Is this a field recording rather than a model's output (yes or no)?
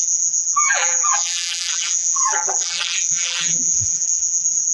no